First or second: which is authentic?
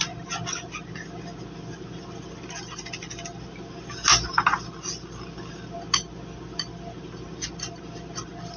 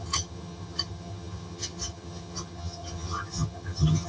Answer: first